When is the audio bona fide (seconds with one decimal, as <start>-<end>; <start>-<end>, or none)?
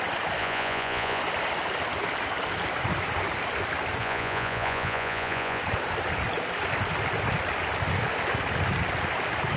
0.0-0.4; 1.2-4.0; 5.6-9.6